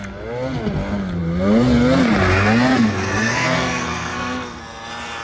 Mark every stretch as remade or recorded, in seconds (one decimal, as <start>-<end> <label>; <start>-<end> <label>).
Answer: 0.0-2.7 recorded; 2.7-4.6 remade; 4.6-5.2 recorded

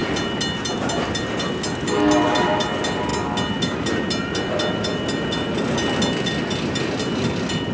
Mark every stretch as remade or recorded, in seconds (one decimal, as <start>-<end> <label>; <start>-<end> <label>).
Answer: 0.0-7.7 recorded

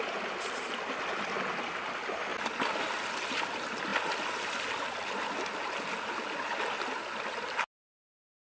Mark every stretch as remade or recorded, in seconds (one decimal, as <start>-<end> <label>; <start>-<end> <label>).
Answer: 0.0-8.5 recorded